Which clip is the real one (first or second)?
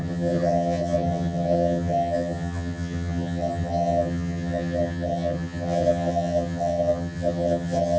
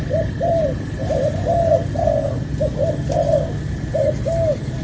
second